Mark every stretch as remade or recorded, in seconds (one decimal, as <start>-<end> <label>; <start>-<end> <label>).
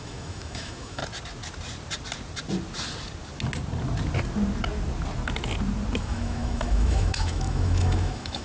0.0-1.0 remade; 1.0-6.0 recorded; 6.0-8.4 remade